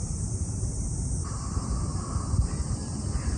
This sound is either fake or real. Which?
fake